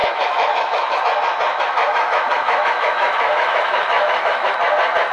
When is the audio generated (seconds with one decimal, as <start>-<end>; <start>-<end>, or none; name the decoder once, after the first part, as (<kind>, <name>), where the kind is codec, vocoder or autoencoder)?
0.0-1.0 (autoencoder, DAC-VAE); 1.5-4.5